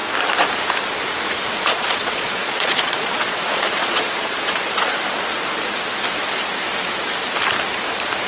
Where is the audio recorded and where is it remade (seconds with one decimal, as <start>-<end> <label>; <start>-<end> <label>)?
0.0-1.6 recorded; 1.6-4.9 remade; 4.9-8.3 recorded